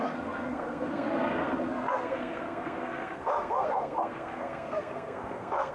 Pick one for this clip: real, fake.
fake